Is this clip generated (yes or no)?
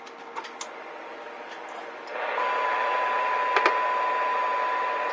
no